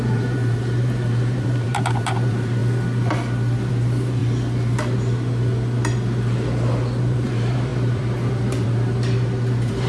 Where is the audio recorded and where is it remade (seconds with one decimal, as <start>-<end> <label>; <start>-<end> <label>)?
0.0-2.6 remade; 2.6-3.7 recorded; 3.7-4.2 remade; 4.2-7.0 recorded; 7.0-9.9 remade